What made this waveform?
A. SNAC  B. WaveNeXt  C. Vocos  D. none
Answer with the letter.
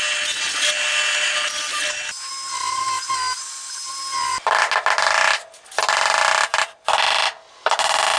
D